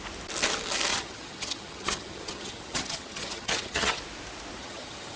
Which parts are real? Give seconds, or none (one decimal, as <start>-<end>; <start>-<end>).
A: 0.0-0.9; 4.0-4.6